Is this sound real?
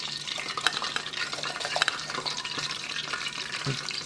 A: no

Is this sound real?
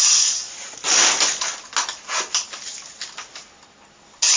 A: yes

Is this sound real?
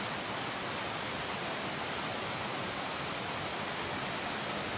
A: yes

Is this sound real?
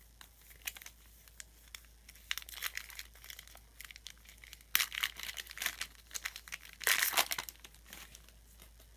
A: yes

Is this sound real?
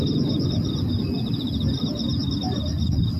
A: yes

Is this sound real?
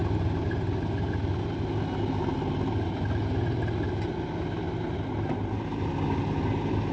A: yes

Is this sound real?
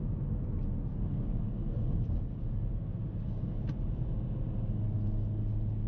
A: yes